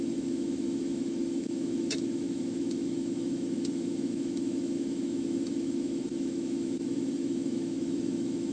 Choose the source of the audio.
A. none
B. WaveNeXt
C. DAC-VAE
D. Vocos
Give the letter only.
C